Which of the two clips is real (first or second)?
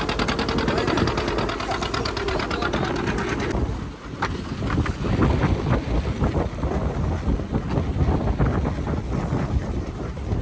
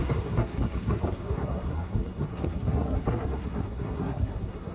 first